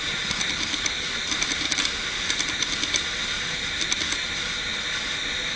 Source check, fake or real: real